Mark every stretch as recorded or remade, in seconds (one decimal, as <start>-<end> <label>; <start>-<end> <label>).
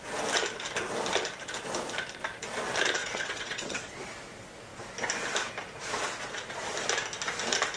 0.0-3.0 recorded; 3.0-3.9 remade; 3.9-7.8 recorded